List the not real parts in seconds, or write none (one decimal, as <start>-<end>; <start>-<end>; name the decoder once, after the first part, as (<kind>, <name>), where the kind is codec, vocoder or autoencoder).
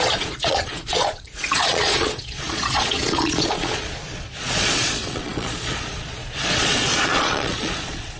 0.0-8.2 (vocoder, Vocos)